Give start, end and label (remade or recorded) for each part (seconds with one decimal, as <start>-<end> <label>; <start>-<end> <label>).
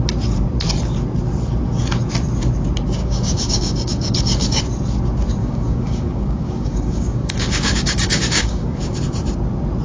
0.0-3.0 recorded; 3.0-4.6 remade; 4.6-5.4 recorded; 5.4-9.0 remade; 9.0-9.8 recorded